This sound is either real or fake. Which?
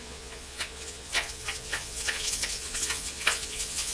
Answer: fake